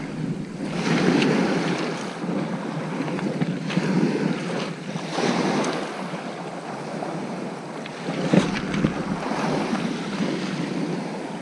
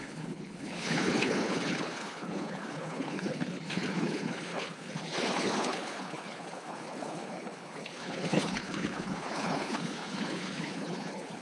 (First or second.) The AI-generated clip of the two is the second